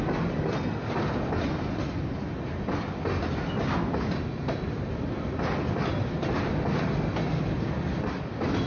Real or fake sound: real